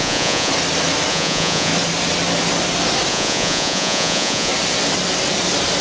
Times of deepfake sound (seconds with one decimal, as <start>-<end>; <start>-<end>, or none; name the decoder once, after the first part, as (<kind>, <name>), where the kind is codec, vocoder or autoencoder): 0.0-0.5 (vocoder, Vocos); 1.1-1.7; 3.1-4.5